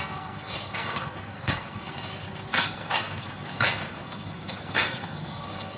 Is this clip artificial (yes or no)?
yes